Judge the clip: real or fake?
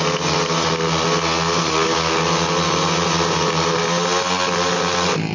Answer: real